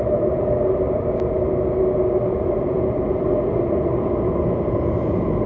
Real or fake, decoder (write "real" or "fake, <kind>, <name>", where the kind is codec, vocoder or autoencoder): real